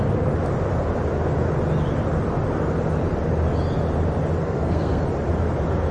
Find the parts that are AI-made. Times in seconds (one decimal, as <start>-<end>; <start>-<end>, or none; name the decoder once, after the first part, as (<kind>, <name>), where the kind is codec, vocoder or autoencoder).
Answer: 4.4-5.0 (codec, SNAC)